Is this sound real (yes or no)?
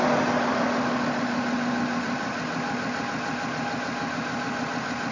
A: yes